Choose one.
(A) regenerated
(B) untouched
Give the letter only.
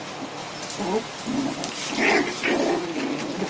B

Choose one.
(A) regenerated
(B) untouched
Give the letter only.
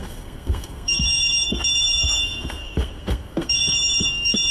A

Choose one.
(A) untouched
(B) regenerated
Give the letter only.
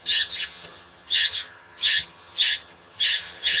B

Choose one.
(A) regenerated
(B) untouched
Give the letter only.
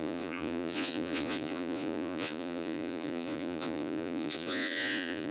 A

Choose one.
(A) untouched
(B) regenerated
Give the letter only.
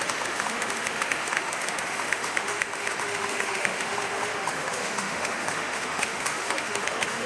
B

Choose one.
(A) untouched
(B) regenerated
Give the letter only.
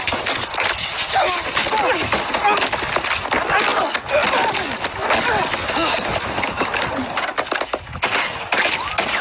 A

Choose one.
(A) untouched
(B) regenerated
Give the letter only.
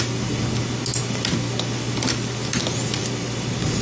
A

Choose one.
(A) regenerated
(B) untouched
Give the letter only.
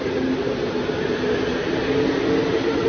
B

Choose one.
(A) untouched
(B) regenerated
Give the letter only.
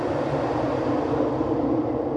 A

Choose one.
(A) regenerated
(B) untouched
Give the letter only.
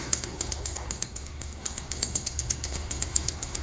A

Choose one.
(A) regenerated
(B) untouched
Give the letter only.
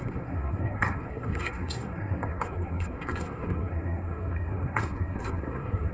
A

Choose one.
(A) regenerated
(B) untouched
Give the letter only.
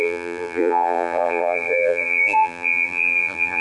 A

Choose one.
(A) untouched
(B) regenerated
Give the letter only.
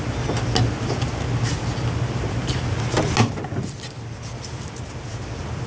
A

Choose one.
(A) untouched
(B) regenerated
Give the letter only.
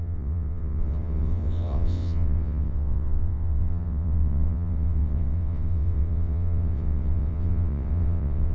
B